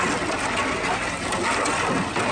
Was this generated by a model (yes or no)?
no